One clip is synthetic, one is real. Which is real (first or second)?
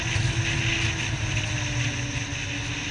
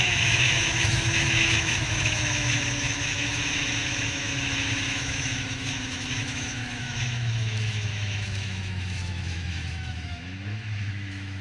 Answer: first